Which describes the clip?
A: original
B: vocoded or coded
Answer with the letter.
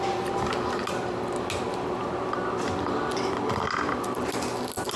A